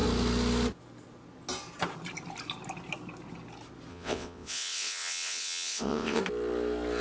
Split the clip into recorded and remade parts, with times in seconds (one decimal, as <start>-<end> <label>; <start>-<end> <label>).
0.0-3.9 recorded; 3.9-6.2 remade; 6.2-7.0 recorded